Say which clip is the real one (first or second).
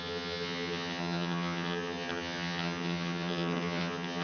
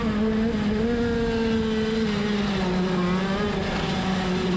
second